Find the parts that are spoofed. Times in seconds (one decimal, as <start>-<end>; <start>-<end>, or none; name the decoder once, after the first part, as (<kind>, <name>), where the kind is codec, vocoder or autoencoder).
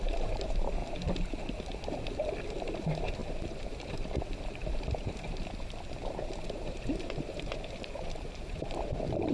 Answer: 0.0-0.8 (vocoder, BigVGAN v2); 2.4-9.3